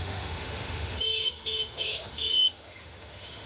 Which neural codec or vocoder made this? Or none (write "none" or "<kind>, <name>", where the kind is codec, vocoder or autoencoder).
autoencoder, DAC-VAE